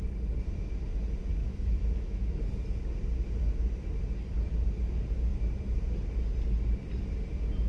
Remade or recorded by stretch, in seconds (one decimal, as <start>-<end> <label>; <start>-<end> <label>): 0.0-1.4 recorded; 1.4-2.4 remade; 2.4-7.7 recorded